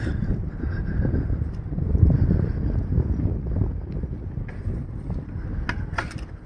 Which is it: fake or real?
real